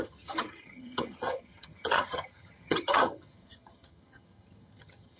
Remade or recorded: remade